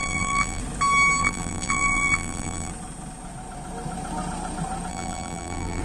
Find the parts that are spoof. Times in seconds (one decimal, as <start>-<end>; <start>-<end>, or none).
0.0-0.6; 1.2-2.7; 4.9-5.8